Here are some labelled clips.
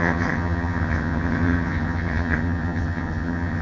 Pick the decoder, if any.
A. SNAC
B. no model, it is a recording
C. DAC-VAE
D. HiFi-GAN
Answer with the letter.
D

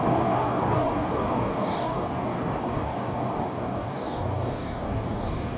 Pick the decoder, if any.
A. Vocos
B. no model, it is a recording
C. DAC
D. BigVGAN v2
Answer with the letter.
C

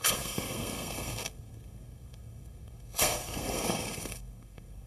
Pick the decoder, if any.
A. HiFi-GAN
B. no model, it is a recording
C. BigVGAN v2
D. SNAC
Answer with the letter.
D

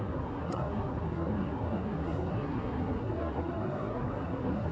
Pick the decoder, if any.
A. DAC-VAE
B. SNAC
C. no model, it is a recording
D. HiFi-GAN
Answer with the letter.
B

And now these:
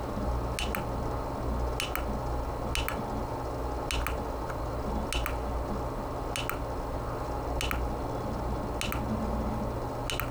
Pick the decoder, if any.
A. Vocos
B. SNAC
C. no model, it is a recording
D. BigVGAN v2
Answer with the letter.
C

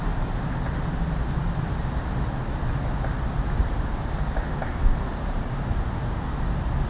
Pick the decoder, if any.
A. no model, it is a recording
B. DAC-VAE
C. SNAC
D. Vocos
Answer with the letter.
A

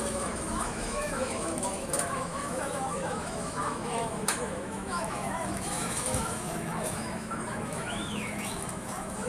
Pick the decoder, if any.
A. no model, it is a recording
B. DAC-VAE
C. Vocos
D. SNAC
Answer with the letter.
B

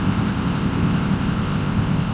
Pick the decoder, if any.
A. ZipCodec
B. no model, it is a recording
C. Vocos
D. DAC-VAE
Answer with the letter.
A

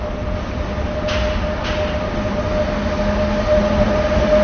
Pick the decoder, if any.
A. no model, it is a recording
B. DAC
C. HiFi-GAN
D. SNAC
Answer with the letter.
A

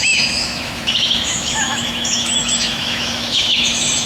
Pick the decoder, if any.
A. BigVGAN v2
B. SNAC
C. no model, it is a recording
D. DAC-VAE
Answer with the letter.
D